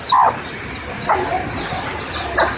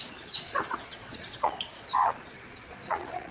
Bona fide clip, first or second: first